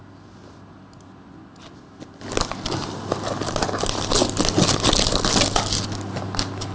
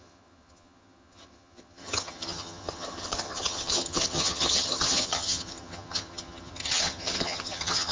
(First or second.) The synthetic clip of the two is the second